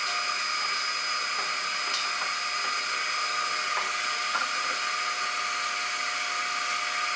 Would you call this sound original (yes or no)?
yes